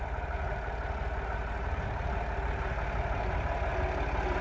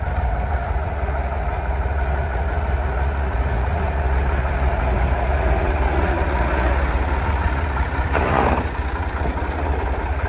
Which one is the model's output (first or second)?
second